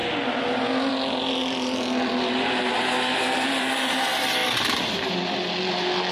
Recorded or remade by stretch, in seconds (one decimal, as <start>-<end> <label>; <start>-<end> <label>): 0.0-6.1 recorded